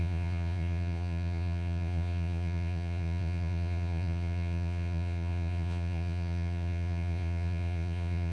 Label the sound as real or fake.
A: fake